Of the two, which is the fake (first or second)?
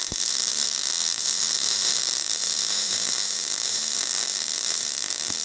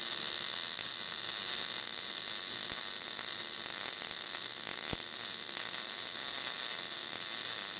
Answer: first